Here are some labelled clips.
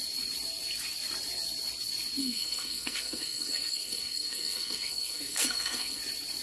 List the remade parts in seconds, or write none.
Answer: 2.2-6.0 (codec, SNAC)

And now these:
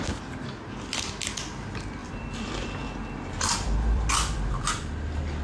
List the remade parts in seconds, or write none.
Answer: 2.0-4.5 (vocoder, BigVGAN v2)

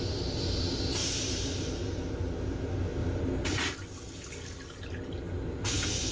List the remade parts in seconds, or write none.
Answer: 1.0-2.1 (vocoder, BigVGAN v2); 3.0-3.6

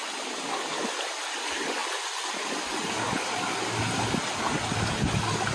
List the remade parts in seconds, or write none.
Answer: none

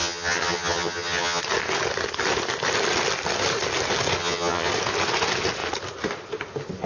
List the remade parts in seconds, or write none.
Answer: 0.0-1.4 (vocoder, HiFi-GAN); 4.2-4.7

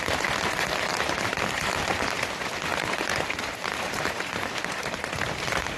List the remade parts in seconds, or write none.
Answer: 0.9-1.5 (vocoder, BigVGAN v2)